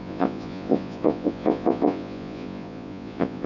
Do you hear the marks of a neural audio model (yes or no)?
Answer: yes